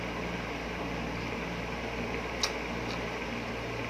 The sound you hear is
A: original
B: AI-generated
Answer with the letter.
A